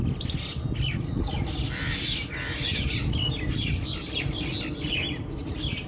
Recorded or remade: recorded